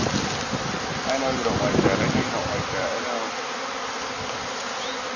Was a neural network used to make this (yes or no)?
no